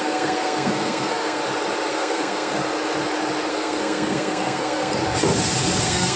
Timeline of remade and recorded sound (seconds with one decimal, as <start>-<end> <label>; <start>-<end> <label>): 0.0-1.4 remade; 1.4-1.9 recorded; 1.9-2.5 remade; 2.5-3.5 recorded; 3.5-5.0 remade; 5.0-5.8 recorded; 5.8-6.2 remade